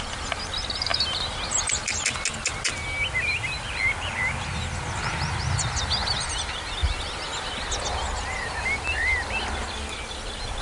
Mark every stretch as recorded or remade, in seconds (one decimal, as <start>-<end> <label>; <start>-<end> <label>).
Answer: 0.0-10.6 recorded